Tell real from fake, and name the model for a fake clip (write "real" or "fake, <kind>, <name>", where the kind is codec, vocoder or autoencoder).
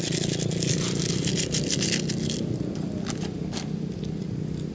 real